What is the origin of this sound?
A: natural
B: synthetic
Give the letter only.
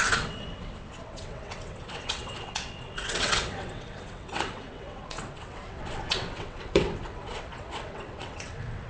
B